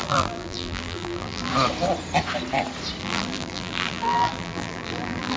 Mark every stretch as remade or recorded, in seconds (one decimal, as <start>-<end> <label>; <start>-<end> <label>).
0.0-1.5 remade; 1.5-3.0 recorded; 3.0-5.4 remade